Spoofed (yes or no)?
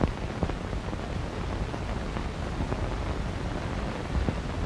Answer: no